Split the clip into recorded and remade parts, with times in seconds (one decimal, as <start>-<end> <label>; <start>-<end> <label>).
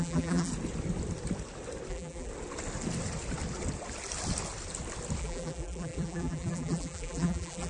0.0-0.5 remade; 0.5-1.9 recorded; 1.9-2.3 remade; 2.3-5.2 recorded; 5.2-7.7 remade